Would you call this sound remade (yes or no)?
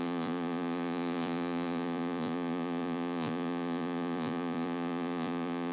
yes